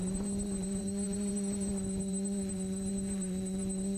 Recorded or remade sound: remade